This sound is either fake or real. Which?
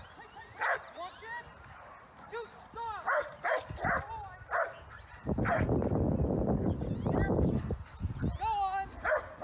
real